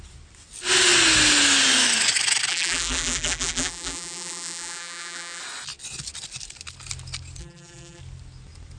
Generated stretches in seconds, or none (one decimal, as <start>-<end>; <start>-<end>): 2.5-5.4; 7.4-8.0